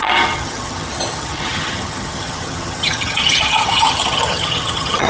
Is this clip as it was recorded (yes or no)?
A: no